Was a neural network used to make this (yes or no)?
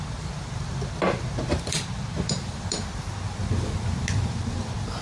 no